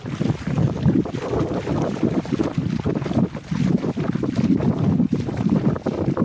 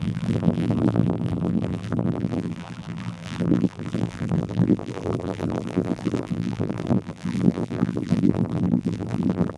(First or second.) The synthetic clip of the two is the second